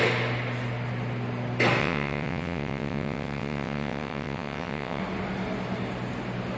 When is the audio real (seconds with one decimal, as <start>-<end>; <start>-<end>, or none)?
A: 0.0-1.8; 5.0-6.6